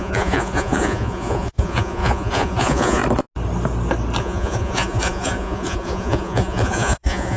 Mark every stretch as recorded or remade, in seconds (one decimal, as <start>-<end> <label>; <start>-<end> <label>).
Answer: 0.0-3.0 remade; 3.0-4.2 recorded; 4.2-7.4 remade